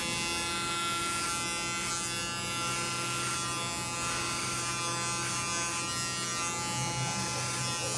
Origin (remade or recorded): recorded